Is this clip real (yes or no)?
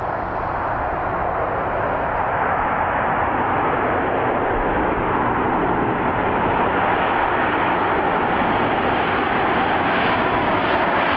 yes